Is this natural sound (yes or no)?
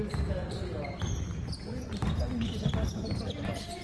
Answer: yes